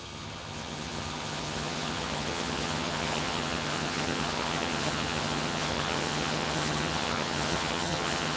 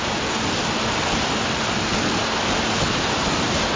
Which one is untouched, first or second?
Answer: second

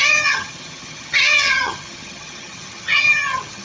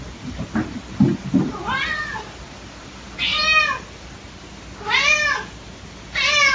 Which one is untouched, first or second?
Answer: second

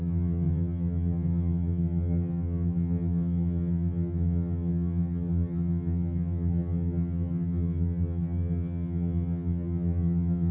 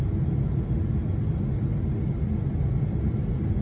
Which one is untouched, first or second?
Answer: second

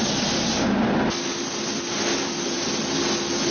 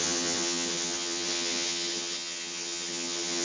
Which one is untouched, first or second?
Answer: first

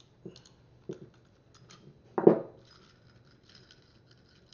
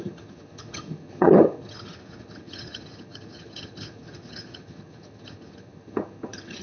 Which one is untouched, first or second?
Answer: first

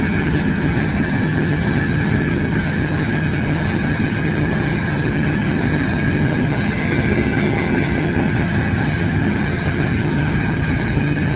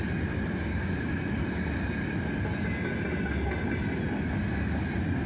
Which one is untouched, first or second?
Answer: second